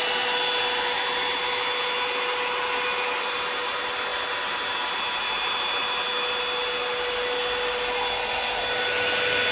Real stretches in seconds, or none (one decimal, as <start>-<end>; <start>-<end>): 0.0-9.5

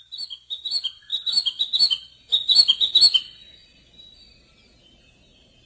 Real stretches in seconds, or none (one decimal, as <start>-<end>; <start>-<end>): 0.0-1.1; 1.9-5.7